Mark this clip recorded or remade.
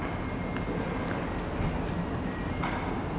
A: recorded